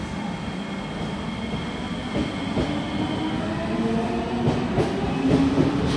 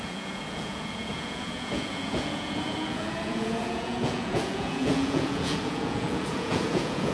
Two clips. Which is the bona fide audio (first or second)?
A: first